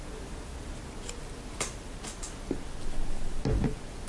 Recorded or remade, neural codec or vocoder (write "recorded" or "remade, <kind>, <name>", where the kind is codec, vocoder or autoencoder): recorded